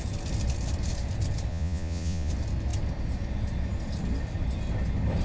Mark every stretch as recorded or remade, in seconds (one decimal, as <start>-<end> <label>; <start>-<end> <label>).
0.0-1.5 recorded; 1.5-2.3 remade; 2.3-5.2 recorded